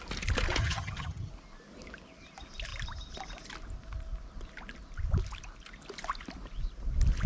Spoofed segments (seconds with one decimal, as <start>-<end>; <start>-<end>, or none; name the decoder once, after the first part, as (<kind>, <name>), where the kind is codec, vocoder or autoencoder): 0.6-1.3 (vocoder, HiFi-GAN)